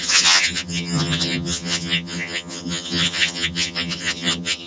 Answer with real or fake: fake